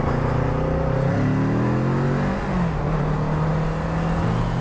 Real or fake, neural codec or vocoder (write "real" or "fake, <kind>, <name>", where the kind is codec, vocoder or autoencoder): real